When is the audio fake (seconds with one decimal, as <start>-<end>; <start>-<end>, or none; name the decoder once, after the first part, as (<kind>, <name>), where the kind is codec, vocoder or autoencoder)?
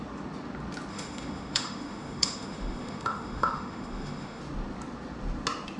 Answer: 0.9-4.4 (autoencoder, DAC-VAE)